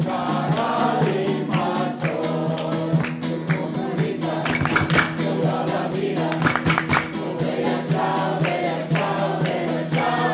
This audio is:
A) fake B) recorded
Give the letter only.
B